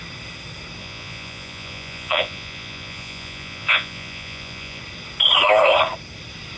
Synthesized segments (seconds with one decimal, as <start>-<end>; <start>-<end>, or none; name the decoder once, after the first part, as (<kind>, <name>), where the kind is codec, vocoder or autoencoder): 0.8-4.8 (vocoder, Vocos)